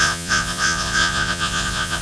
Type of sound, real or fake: fake